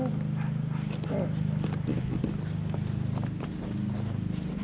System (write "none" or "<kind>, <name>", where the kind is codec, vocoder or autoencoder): none